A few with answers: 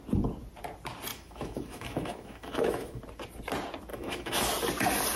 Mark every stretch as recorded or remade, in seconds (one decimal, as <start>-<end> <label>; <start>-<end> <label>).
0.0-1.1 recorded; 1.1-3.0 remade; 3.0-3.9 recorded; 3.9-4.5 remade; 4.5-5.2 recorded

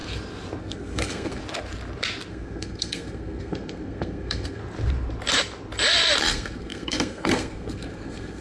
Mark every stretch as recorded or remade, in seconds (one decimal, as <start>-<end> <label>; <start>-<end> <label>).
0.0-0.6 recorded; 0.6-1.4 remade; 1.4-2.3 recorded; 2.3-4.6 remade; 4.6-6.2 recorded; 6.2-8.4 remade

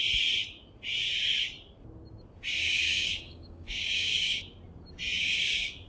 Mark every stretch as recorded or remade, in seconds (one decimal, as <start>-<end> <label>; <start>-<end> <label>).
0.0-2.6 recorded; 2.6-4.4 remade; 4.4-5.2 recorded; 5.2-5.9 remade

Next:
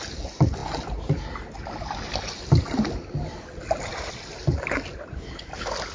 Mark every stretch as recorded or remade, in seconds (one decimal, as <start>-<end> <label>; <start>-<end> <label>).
0.0-5.9 recorded

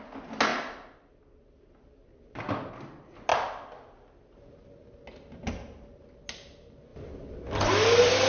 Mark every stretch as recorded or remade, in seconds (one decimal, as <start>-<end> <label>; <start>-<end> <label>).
0.0-0.5 recorded; 0.5-2.7 remade; 2.7-8.3 recorded